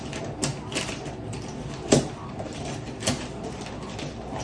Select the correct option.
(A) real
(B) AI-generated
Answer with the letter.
A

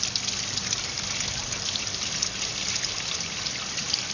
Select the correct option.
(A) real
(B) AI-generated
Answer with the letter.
A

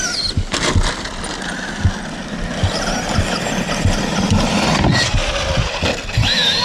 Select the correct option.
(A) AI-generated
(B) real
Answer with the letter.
B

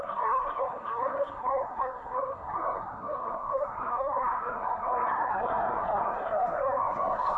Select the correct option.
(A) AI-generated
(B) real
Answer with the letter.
A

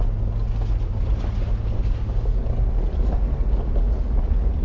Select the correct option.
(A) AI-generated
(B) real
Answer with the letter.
B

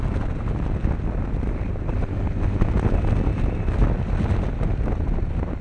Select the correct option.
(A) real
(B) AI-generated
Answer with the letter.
A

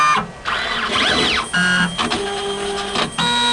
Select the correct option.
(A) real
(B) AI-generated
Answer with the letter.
A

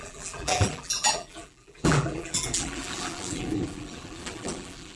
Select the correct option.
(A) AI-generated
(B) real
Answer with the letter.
A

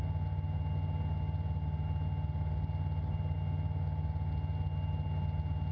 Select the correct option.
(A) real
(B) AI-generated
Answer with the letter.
A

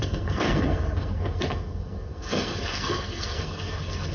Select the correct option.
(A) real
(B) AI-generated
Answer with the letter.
B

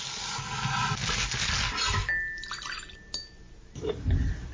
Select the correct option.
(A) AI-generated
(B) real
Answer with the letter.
B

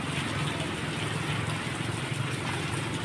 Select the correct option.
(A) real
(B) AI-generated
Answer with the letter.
A